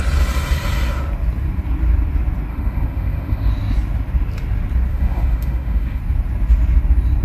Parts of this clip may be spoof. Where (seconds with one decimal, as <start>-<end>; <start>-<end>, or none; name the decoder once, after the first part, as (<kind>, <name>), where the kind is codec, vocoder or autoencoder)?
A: 2.5-3.5 (autoencoder, DAC-VAE); 4.9-6.0